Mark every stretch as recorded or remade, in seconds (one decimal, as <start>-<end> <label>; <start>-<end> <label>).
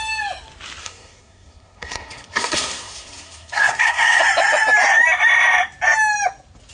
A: 0.0-0.8 recorded; 0.8-4.2 remade; 4.2-6.7 recorded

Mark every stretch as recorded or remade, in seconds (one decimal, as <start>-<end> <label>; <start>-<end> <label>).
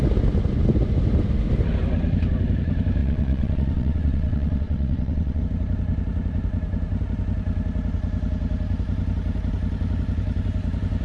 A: 0.0-3.0 recorded; 3.0-5.4 remade; 5.4-11.0 recorded